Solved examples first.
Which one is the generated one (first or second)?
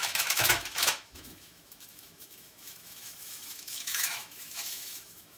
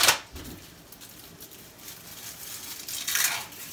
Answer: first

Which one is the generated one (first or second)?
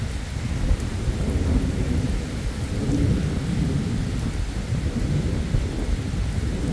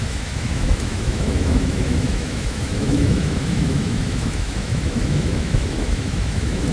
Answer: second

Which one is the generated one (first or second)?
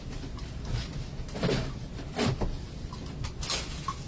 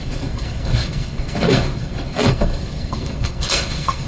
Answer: second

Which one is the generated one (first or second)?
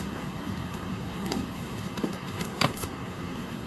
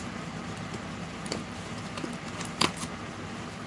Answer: first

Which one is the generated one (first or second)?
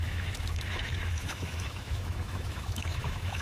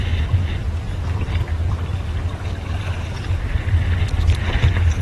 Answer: first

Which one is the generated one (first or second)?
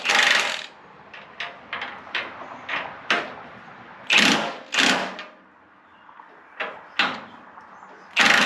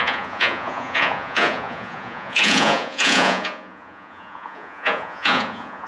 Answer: second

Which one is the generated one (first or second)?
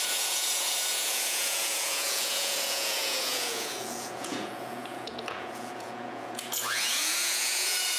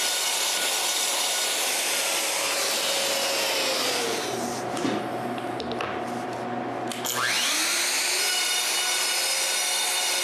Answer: first